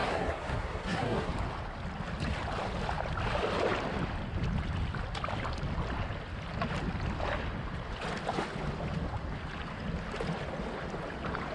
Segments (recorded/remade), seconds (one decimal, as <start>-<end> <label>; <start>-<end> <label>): 0.0-1.3 remade; 1.3-11.5 recorded